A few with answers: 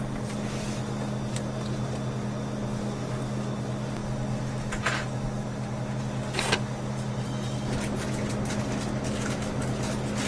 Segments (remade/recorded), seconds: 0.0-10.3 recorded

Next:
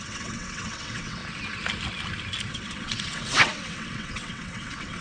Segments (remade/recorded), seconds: 0.0-1.2 remade; 1.2-2.5 recorded; 2.5-5.0 remade

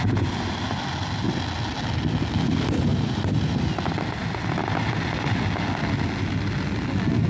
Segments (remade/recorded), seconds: 0.0-7.3 recorded

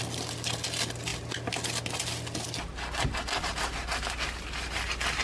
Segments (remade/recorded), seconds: 0.0-5.2 recorded

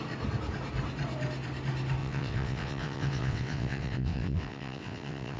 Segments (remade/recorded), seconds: 0.0-2.0 recorded; 2.0-5.4 remade